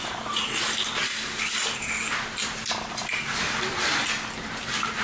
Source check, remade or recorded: recorded